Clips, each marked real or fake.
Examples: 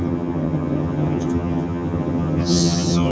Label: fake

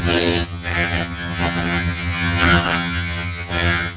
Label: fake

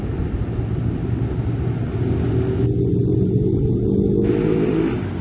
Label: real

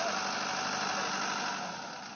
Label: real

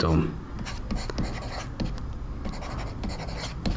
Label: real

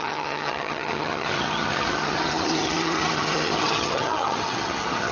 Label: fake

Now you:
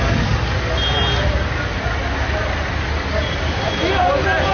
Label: real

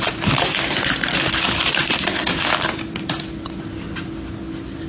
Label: real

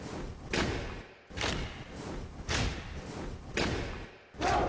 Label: real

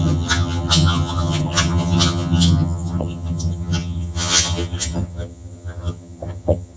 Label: fake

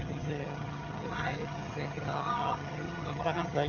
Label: fake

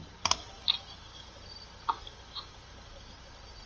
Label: real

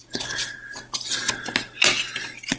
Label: real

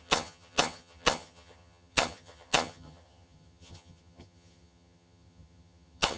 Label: fake